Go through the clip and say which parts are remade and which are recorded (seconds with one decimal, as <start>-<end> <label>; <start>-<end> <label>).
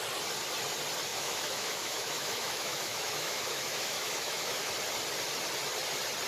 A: 0.0-1.1 recorded; 1.1-4.7 remade; 4.7-6.3 recorded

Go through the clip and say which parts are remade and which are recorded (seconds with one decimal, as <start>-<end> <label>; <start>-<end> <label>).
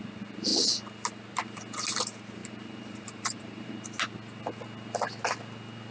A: 0.0-2.4 recorded; 2.4-3.7 remade; 3.7-5.9 recorded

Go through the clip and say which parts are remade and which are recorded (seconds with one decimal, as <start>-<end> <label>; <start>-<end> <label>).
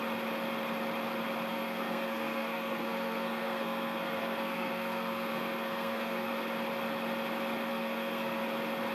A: 0.0-1.5 recorded; 1.5-6.3 remade; 6.3-7.7 recorded; 7.7-8.4 remade; 8.4-8.9 recorded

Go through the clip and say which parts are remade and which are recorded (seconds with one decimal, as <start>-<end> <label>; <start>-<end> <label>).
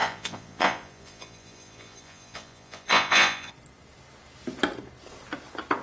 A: 0.0-3.5 remade; 3.5-5.8 recorded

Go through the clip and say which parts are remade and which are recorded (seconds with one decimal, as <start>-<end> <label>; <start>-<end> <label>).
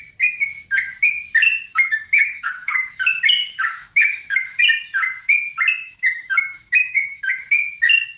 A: 0.0-1.7 recorded; 1.7-2.9 remade; 2.9-3.4 recorded; 3.4-4.6 remade; 4.6-5.8 recorded; 5.8-7.4 remade; 7.4-8.2 recorded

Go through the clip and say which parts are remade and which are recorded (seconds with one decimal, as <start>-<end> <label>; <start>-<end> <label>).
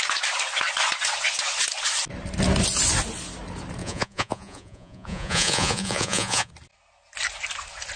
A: 0.0-3.8 recorded; 3.8-6.5 remade; 6.5-8.0 recorded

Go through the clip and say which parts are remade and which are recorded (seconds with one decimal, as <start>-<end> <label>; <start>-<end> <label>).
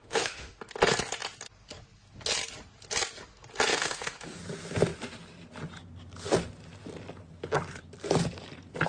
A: 0.0-0.6 remade; 0.6-3.7 recorded; 3.7-4.4 remade; 4.4-8.9 recorded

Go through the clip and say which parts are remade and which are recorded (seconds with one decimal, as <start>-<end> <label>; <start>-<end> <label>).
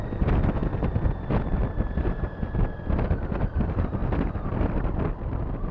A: 0.0-5.7 recorded